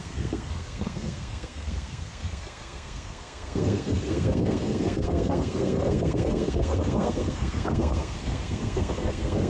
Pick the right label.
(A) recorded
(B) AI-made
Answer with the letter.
B